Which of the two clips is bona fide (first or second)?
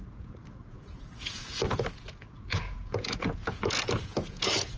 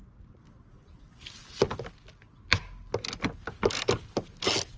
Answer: second